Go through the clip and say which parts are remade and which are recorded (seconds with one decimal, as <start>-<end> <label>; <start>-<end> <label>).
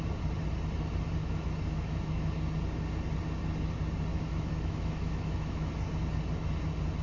0.0-1.2 recorded; 1.2-2.3 remade; 2.3-4.1 recorded; 4.1-5.7 remade; 5.7-7.0 recorded